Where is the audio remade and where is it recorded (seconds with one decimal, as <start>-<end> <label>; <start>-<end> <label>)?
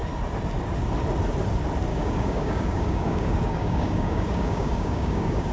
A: 0.0-1.9 recorded; 1.9-5.5 remade